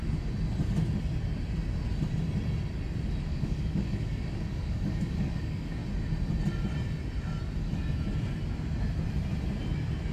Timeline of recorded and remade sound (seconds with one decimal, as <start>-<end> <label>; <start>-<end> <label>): 0.0-3.2 recorded; 3.2-5.8 remade; 5.8-10.1 recorded